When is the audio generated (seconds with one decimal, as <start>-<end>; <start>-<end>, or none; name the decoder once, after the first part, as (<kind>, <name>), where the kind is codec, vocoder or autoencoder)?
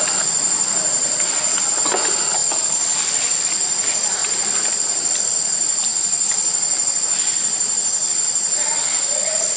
none